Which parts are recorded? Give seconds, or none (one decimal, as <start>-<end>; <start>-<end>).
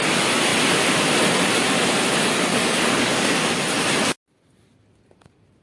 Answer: 0.0-2.5; 3.3-5.6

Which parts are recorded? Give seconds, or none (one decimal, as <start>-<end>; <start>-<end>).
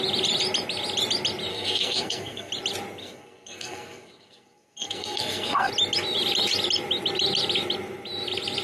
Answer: 0.0-1.5; 2.5-3.0; 5.7-8.6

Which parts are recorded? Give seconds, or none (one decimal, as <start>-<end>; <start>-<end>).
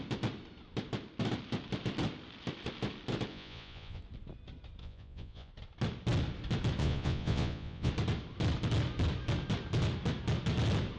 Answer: 0.0-3.3; 4.0-4.8; 5.5-6.8; 7.9-11.0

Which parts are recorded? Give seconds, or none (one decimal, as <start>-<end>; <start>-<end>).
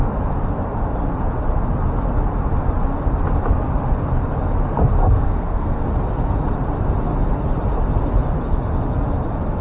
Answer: 0.0-5.0; 5.8-9.6